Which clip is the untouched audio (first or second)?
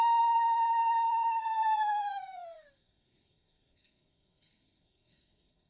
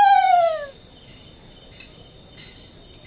second